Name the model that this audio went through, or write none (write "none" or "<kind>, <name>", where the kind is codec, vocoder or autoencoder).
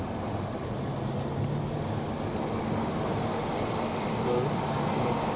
none